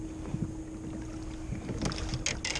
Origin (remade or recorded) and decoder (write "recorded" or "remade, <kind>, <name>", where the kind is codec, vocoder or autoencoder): recorded